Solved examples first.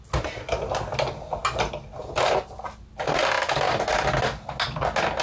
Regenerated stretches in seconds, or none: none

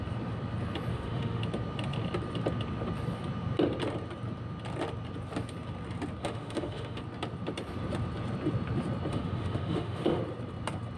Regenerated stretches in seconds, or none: 0.9-1.4 (autoencoder, DAC-VAE); 6.2-7.0; 9.1-10.2

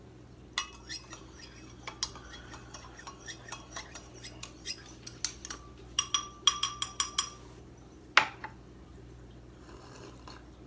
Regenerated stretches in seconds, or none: none

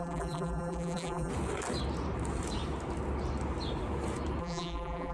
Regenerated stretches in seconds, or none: 0.0-1.3 (vocoder, BigVGAN v2); 4.4-5.1

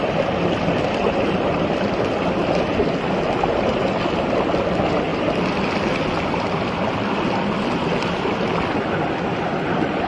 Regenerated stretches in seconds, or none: none

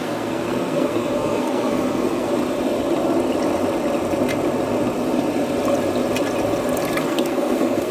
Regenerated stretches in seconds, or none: 0.0-2.3 (codec, SNAC); 7.0-7.9

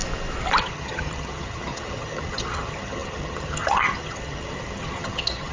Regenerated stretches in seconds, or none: 0.6-5.5 (vocoder, HiFi-GAN)